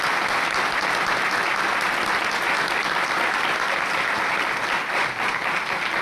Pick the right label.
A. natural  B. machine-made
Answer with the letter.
A